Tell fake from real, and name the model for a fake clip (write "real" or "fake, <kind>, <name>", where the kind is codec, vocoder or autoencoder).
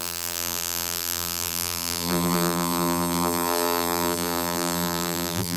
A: fake, vocoder, BigVGAN v2